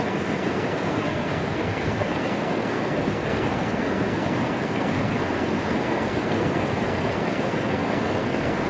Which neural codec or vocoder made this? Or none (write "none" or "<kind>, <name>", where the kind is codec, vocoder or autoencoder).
codec, SNAC